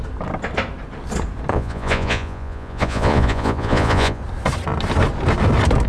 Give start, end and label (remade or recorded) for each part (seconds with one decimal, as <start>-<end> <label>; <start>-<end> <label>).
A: 0.0-1.5 recorded; 1.5-4.2 remade; 4.2-5.9 recorded